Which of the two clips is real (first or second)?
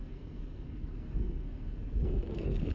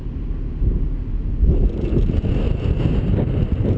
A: second